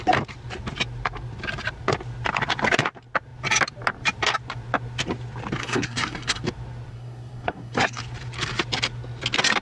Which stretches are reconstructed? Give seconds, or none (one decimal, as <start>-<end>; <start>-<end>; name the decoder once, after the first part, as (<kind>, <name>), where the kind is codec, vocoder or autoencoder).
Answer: 5.6-6.4 (codec, SNAC); 6.9-8.0